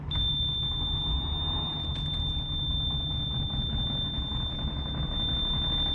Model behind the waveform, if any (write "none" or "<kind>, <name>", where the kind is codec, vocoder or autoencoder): none